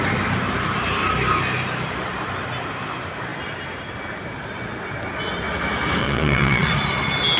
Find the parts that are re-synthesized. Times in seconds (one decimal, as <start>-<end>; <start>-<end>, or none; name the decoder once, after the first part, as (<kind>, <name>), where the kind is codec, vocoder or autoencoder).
6.0-6.7 (vocoder, Vocos)